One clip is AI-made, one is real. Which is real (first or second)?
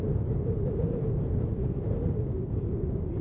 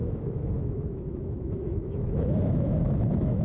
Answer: first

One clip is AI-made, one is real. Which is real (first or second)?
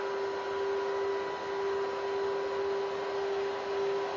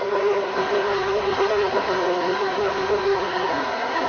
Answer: first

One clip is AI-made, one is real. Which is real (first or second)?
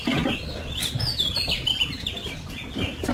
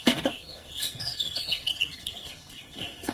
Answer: first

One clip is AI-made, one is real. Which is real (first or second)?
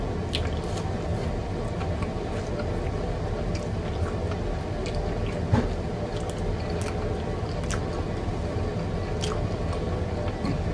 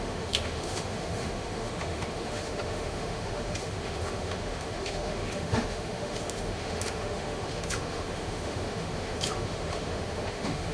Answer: first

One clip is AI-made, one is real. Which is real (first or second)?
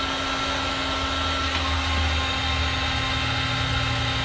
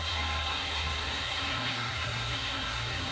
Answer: first